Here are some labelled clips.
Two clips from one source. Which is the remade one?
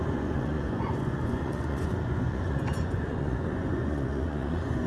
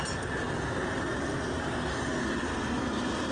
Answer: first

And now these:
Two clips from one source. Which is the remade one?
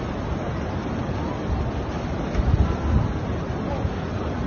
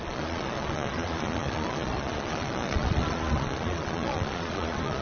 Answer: second